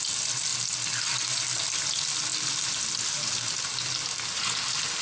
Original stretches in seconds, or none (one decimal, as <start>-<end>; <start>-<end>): 0.0-5.0